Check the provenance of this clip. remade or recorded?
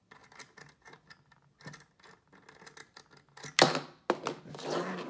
recorded